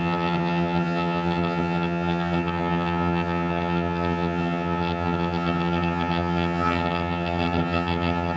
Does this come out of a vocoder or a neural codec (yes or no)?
yes